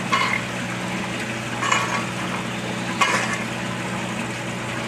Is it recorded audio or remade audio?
recorded